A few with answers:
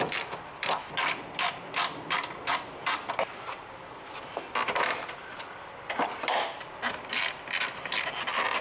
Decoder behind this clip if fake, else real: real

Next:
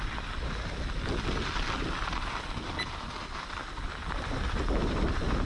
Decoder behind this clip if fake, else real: real